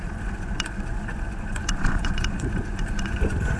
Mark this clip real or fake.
fake